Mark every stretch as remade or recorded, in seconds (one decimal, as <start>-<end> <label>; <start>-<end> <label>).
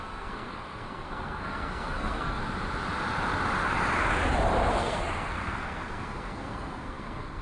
0.0-2.4 remade; 2.4-4.7 recorded; 4.7-7.4 remade